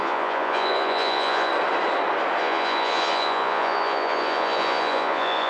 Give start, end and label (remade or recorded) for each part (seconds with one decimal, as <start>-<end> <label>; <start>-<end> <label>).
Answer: 0.0-1.5 remade; 1.5-2.4 recorded; 2.4-5.5 remade

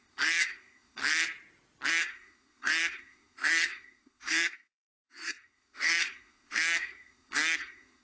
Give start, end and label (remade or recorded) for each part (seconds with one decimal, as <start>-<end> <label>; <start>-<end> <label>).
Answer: 0.0-1.0 remade; 1.0-1.9 recorded; 1.9-8.0 remade

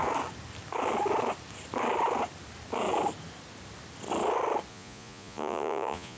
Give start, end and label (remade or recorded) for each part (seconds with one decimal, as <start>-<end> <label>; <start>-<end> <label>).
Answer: 0.0-4.7 recorded; 4.7-6.2 remade

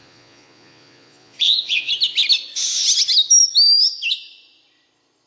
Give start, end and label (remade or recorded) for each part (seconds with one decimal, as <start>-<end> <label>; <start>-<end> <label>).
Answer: 0.0-1.9 remade; 1.9-5.3 recorded

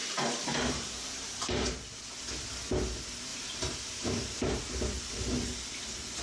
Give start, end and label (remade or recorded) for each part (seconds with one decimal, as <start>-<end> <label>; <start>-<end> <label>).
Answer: 0.0-1.8 remade; 1.8-3.3 recorded; 3.3-4.6 remade; 4.6-6.2 recorded

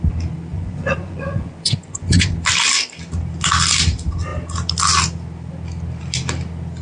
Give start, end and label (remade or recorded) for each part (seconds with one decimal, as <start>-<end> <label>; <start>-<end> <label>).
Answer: 0.0-0.5 recorded; 0.5-2.3 remade; 2.3-6.8 recorded

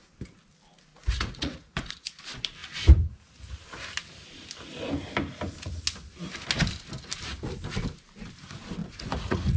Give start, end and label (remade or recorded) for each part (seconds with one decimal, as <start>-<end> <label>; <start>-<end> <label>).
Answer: 0.0-0.9 recorded; 0.9-2.2 remade; 2.2-8.8 recorded; 8.8-9.6 remade

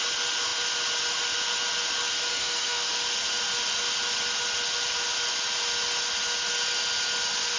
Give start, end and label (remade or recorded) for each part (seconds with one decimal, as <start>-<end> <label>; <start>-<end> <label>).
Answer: 0.0-2.3 recorded; 2.3-2.9 remade; 2.9-7.6 recorded